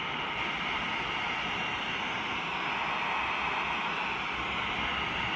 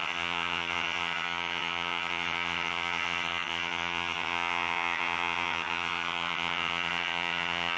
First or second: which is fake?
second